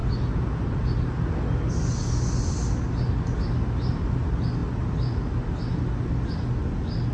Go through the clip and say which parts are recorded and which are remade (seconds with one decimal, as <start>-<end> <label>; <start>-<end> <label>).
0.0-7.1 recorded